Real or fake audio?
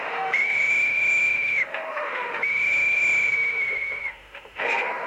fake